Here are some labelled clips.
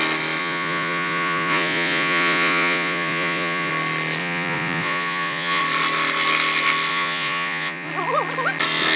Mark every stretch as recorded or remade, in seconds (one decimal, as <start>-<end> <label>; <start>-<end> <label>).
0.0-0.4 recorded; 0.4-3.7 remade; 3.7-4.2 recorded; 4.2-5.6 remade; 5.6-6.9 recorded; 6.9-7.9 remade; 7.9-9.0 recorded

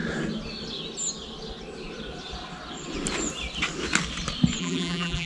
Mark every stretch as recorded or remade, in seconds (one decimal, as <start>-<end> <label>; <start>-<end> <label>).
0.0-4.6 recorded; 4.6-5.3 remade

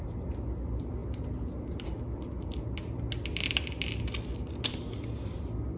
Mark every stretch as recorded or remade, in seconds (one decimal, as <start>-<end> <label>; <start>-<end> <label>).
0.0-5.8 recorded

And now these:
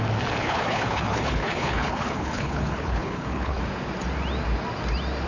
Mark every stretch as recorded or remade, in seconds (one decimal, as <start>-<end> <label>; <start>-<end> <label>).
0.0-0.4 recorded; 0.4-3.6 remade; 3.6-5.3 recorded

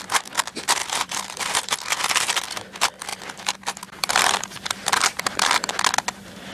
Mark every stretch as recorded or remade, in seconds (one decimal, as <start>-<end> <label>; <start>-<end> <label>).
0.0-0.8 recorded; 0.8-2.0 remade; 2.0-3.1 recorded; 3.1-5.7 remade; 5.7-6.5 recorded